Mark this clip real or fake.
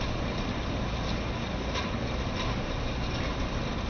real